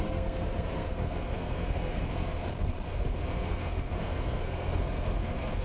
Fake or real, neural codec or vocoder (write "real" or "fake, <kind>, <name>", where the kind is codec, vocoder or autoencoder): fake, codec, SNAC